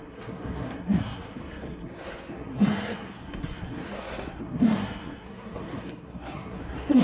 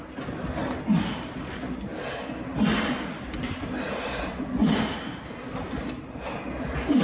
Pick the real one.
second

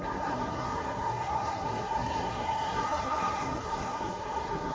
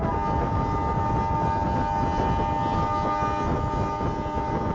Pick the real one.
second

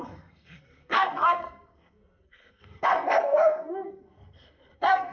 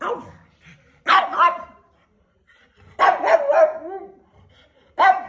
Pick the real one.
second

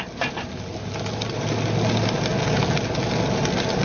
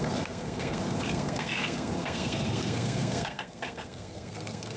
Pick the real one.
first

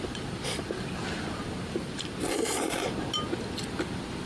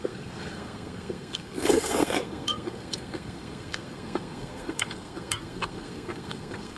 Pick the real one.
first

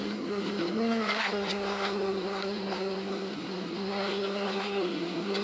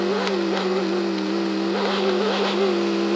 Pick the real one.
second